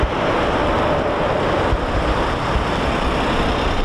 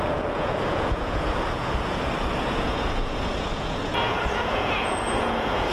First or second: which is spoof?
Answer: second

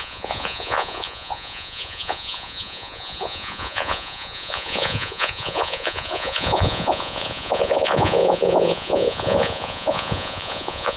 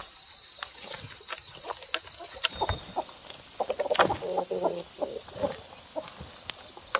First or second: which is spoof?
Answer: first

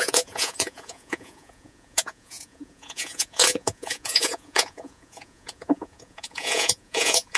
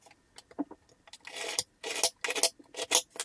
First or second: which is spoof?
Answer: first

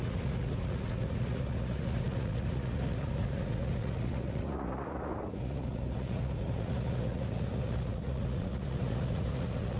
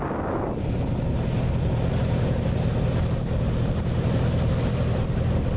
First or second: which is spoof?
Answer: first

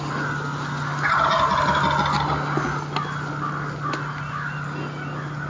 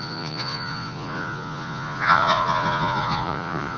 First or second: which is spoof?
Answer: second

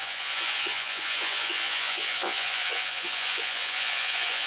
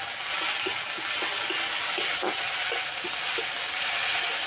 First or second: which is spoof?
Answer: first